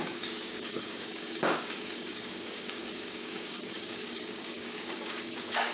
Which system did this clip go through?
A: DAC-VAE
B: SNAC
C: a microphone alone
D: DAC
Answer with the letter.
D